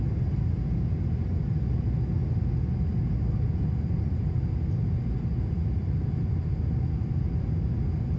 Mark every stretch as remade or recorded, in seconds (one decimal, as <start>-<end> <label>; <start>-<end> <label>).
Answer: 0.0-8.2 recorded